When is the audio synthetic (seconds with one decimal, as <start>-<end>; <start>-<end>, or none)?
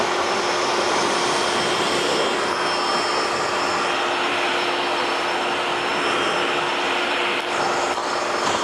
none